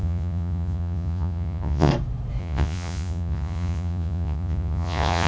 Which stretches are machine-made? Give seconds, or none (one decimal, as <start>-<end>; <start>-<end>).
0.0-1.9; 2.4-5.3